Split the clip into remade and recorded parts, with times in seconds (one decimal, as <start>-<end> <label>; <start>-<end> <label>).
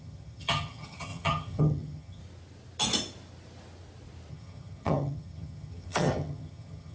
0.0-2.2 remade; 2.2-4.3 recorded; 4.3-6.9 remade